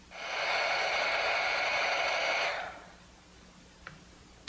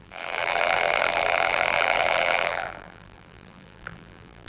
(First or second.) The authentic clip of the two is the first